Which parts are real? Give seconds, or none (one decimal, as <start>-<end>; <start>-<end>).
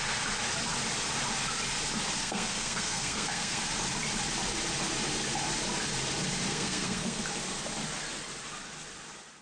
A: 0.0-2.2; 3.6-6.5; 7.2-9.4